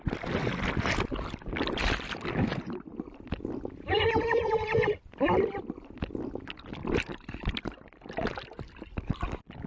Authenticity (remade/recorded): recorded